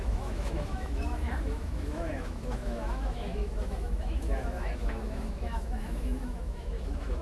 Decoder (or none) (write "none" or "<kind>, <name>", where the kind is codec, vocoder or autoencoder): autoencoder, DAC-VAE